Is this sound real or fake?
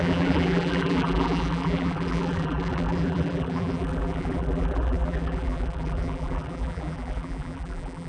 fake